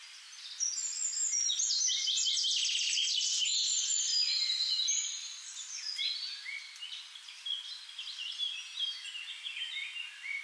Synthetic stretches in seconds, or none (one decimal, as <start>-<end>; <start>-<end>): none